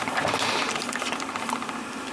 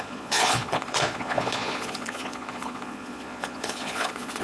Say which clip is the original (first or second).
first